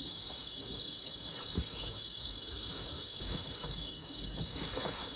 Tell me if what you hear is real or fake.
fake